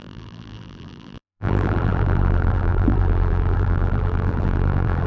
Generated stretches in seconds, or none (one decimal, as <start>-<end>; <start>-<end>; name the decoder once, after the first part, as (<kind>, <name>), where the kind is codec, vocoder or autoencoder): 0.0-5.1 (vocoder, BigVGAN v2)